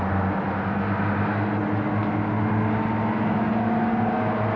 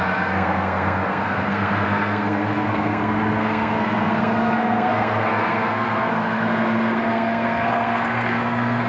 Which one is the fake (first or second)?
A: second